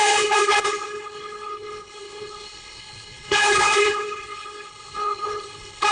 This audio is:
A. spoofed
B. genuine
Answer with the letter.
A